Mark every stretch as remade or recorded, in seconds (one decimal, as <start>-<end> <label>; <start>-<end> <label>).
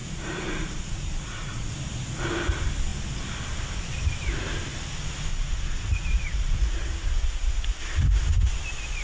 0.0-1.7 remade; 1.7-5.3 recorded; 5.3-7.8 remade; 7.8-9.0 recorded